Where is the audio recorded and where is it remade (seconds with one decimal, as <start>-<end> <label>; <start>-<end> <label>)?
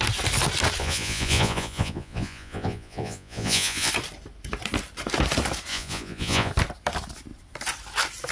0.0-0.8 recorded; 0.8-3.9 remade; 3.9-5.7 recorded; 5.7-6.5 remade; 6.5-8.3 recorded